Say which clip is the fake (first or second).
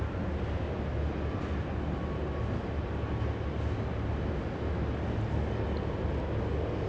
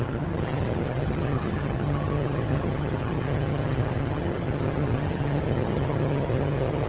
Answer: second